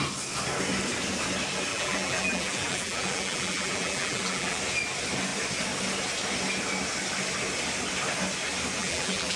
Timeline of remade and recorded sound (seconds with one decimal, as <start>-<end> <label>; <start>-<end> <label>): 0.0-1.7 recorded; 1.7-4.6 remade; 4.6-8.8 recorded; 8.8-9.4 remade